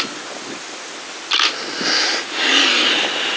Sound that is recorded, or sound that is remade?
recorded